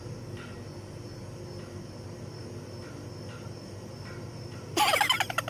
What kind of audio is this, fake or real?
real